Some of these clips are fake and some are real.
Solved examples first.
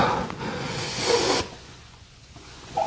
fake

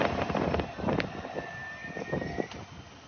real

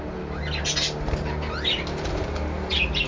real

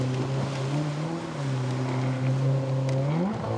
real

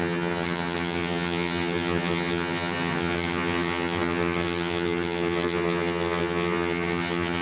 fake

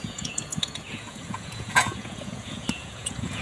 fake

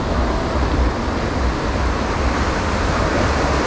real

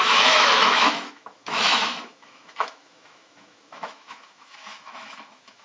fake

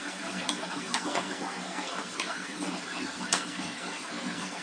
fake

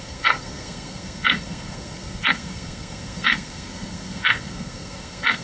fake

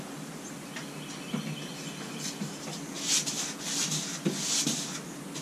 real